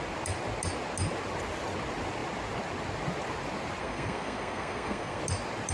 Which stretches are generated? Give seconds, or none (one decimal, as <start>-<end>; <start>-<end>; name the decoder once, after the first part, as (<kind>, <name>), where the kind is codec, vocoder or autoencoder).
3.8-5.2 (codec, SNAC)